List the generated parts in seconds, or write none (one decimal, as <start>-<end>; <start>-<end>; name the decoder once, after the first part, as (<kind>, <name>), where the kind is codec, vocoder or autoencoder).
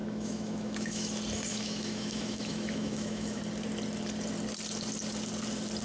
0.0-1.1 (autoencoder, DAC-VAE); 1.5-3.4